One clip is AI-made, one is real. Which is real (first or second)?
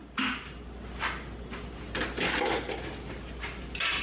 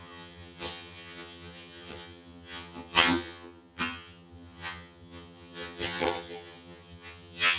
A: first